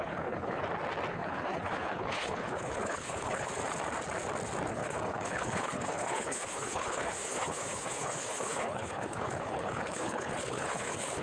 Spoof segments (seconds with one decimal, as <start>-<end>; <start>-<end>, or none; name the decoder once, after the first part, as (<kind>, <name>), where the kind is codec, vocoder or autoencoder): 0.0-0.6 (codec, HILCodec); 1.1-3.5; 4.7-11.2